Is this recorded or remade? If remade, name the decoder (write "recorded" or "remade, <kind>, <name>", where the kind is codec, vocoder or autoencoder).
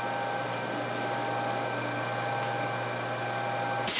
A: recorded